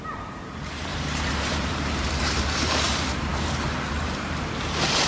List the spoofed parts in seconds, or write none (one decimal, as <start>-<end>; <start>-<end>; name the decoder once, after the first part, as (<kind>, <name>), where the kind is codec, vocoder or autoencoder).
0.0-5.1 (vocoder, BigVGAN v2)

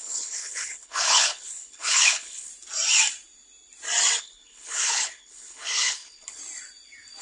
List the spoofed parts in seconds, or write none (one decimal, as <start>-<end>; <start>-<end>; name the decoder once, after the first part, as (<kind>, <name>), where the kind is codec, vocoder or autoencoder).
0.0-2.5 (codec, HILCodec); 4.2-6.4

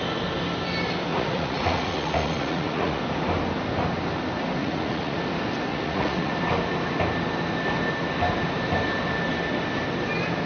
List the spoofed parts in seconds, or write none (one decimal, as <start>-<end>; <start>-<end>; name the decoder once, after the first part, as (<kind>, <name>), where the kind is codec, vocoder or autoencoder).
1.1-3.0 (vocoder, Vocos); 4.6-5.2; 5.7-6.3

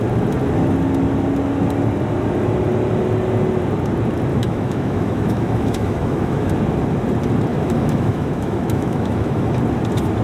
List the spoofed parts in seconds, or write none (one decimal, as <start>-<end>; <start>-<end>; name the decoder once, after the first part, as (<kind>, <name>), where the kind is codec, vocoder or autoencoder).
4.3-6.5 (autoencoder, DAC-VAE); 7.5-9.6

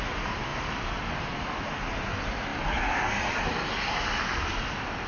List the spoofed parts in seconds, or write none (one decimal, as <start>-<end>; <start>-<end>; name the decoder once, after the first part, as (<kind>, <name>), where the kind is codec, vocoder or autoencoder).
none